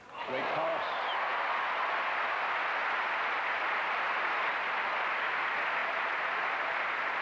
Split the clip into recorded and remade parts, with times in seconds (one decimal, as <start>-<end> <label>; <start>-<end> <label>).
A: 0.0-7.2 recorded